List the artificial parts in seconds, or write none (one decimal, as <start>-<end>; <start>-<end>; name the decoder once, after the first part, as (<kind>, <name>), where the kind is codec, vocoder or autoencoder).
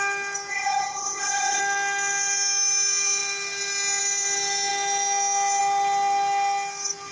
0.5-1.6 (codec, ZipCodec)